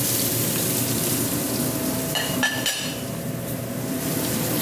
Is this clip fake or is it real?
fake